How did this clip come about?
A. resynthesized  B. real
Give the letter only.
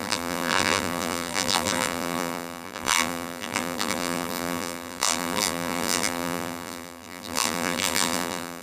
A